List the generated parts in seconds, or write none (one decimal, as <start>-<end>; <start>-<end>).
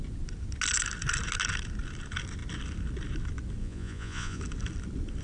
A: 3.6-4.4